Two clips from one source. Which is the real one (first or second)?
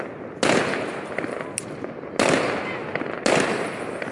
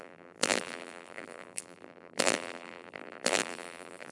first